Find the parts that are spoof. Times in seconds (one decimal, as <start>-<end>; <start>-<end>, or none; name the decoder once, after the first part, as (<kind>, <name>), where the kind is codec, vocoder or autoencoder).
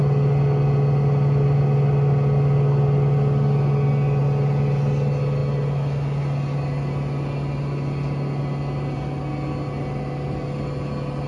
none